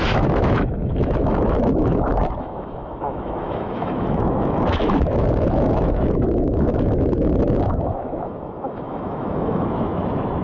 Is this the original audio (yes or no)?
no